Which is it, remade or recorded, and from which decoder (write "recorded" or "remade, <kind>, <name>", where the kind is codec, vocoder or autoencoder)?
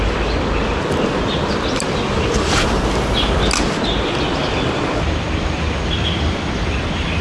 recorded